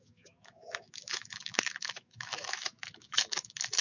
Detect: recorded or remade remade